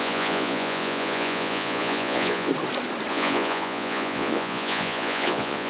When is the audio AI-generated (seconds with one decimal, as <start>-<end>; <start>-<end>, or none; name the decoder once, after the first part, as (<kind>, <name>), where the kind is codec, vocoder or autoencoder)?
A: 0.0-2.5 (vocoder, Vocos); 3.1-5.7